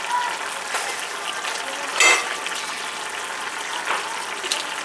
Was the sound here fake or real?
real